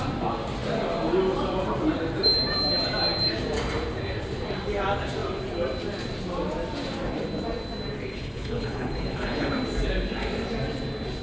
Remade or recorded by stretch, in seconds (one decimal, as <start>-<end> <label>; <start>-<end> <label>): 0.0-8.1 recorded; 8.1-9.5 remade; 9.5-11.2 recorded